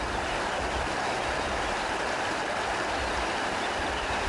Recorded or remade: recorded